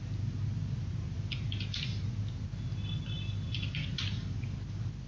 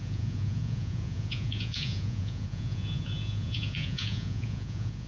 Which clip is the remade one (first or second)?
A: second